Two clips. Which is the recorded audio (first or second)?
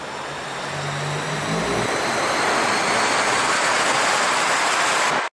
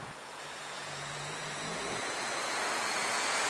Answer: first